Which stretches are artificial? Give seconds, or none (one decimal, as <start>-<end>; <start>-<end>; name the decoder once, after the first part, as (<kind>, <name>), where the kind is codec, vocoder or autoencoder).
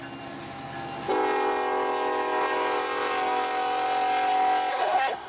4.7-5.3 (codec, SNAC)